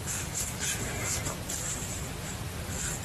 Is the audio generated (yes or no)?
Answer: no